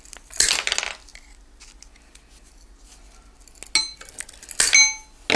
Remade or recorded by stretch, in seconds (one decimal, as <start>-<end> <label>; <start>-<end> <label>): 0.0-5.4 recorded